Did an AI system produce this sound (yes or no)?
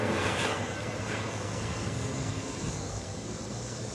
yes